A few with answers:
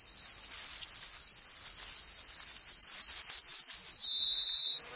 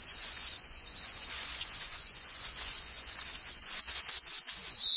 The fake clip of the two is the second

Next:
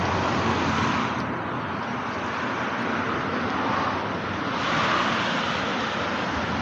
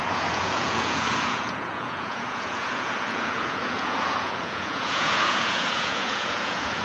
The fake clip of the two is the second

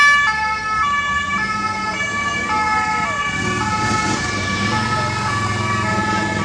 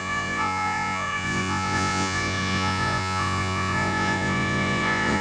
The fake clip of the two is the second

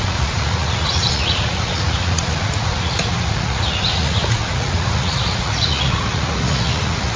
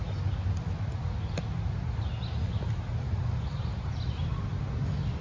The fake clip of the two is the first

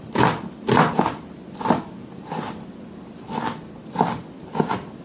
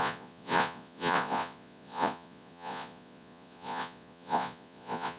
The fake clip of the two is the second